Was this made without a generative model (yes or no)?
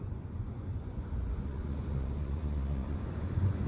no